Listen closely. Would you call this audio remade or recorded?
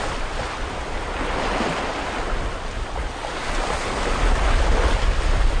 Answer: recorded